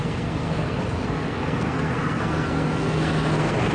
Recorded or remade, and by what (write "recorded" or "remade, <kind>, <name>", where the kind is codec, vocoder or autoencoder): remade, codec, SNAC